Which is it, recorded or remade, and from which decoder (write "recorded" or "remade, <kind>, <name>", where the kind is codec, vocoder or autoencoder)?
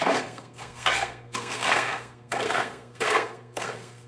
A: remade, codec, SNAC